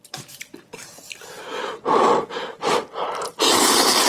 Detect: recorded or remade remade